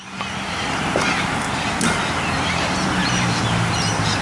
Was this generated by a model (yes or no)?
no